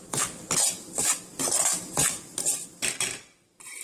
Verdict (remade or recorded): recorded